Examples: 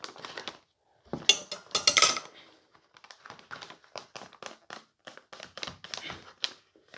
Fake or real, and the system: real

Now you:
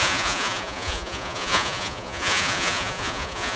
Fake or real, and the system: fake, vocoder, Vocos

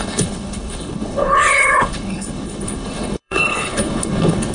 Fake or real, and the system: fake, codec, HILCodec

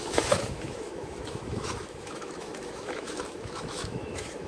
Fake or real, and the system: fake, autoencoder, DAC-VAE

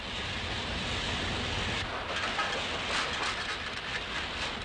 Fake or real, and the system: real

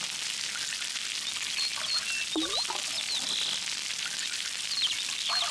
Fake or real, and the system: real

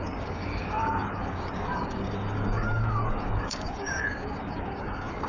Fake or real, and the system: fake, codec, DAC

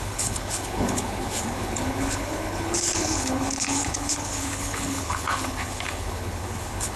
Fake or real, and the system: fake, codec, HILCodec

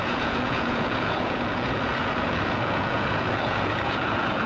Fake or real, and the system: fake, vocoder, Vocos